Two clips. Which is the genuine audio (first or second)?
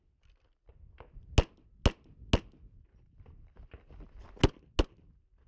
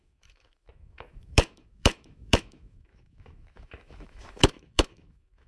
first